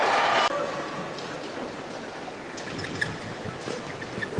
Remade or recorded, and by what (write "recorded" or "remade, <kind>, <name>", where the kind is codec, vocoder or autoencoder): recorded